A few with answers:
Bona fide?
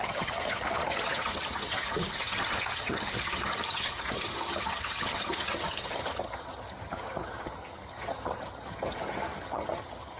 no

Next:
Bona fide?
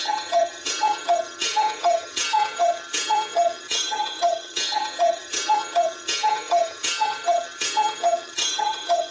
no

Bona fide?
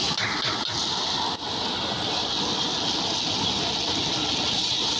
yes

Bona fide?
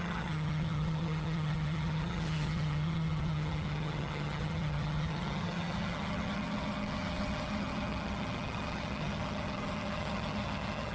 no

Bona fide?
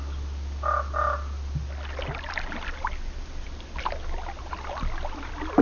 yes